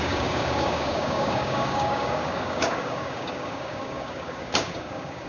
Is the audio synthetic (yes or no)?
yes